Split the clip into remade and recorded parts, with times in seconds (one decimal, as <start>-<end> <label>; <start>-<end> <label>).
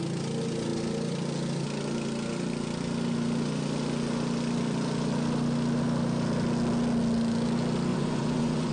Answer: 0.0-7.9 recorded; 7.9-8.7 remade